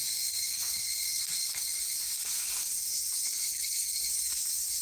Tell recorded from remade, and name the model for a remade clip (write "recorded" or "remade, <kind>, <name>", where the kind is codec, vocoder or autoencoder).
remade, codec, SNAC